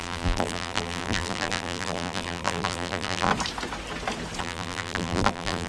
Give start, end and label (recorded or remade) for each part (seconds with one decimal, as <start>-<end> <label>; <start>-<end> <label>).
0.0-3.3 remade; 3.3-4.4 recorded; 4.4-5.7 remade